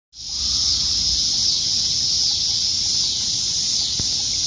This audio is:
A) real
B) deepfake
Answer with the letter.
A